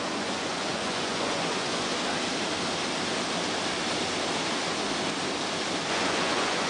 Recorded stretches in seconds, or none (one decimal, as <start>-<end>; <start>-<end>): 1.9-5.9